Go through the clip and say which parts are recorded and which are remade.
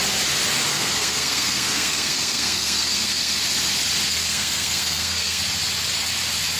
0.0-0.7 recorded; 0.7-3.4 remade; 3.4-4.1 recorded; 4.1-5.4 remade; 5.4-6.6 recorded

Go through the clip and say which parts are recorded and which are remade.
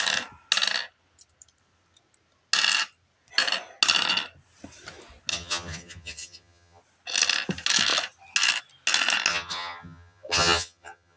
0.0-5.3 recorded; 5.3-6.8 remade; 6.8-9.3 recorded; 9.3-11.2 remade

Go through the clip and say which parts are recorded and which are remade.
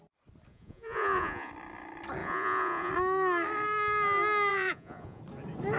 0.0-0.5 recorded; 0.5-1.5 remade; 1.5-2.2 recorded; 2.2-2.9 remade; 2.9-4.5 recorded; 4.5-5.2 remade; 5.2-5.8 recorded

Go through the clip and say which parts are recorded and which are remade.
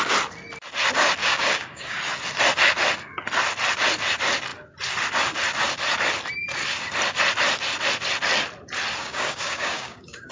0.0-1.2 recorded; 1.2-2.0 remade; 2.0-9.0 recorded; 9.0-10.3 remade